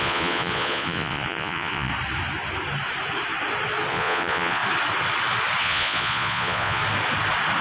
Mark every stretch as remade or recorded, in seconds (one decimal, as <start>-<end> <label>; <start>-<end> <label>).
0.0-1.9 remade; 1.9-3.9 recorded; 3.9-4.6 remade; 4.6-5.6 recorded; 5.6-6.8 remade; 6.8-7.6 recorded